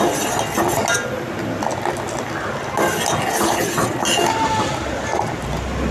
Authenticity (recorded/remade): recorded